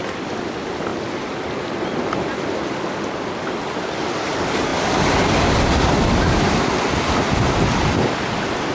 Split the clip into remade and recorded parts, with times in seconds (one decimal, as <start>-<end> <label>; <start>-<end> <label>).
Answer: 0.0-8.7 recorded